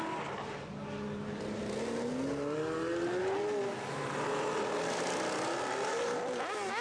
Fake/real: real